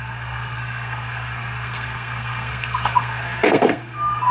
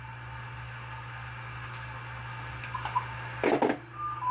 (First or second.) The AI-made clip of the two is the first